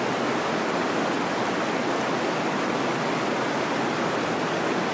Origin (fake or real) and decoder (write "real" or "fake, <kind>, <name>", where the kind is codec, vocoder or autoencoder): real